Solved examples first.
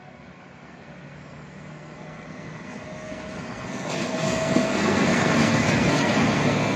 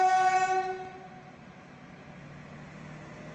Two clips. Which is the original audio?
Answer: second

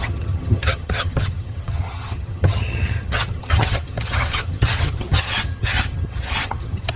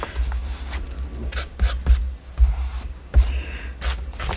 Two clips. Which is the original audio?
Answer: second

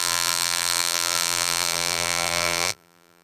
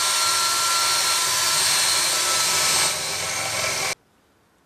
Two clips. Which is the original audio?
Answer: second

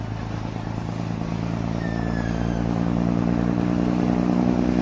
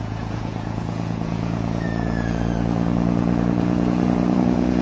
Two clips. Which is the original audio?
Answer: first